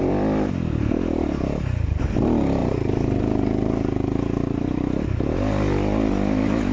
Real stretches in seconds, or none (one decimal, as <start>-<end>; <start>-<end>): 0.0-6.7